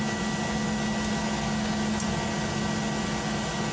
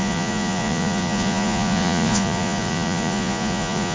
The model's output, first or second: second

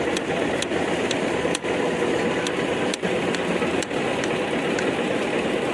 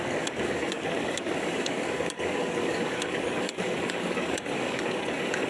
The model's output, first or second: second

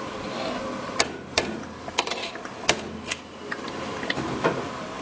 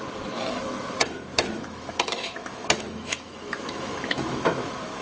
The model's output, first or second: second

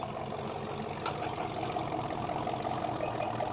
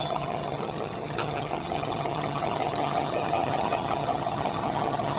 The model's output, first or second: second